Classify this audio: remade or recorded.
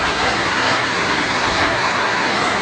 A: remade